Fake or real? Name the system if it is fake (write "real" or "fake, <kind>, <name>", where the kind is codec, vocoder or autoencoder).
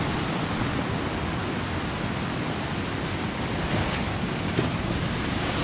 real